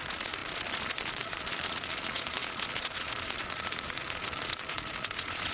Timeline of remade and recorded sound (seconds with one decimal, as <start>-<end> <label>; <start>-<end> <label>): 0.0-5.5 remade